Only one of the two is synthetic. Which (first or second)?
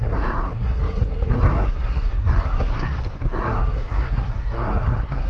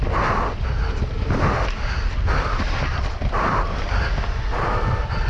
first